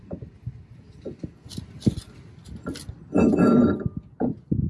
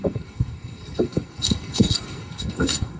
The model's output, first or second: second